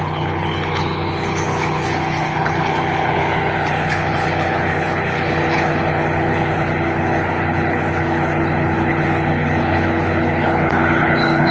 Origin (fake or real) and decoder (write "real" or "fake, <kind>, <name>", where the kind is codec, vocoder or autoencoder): fake, codec, HILCodec